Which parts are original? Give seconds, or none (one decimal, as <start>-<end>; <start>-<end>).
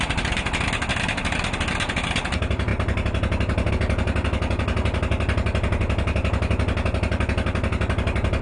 0.0-8.4